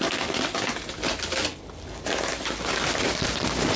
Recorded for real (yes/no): yes